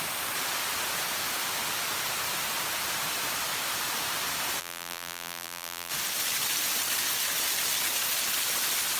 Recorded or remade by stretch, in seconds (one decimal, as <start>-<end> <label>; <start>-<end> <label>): 0.0-4.6 recorded; 4.6-5.9 remade; 5.9-9.0 recorded